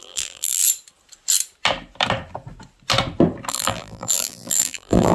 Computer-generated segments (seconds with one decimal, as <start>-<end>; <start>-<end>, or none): 0.0-0.6; 3.5-5.1